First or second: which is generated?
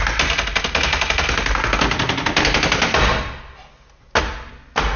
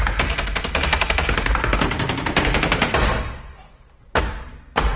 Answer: second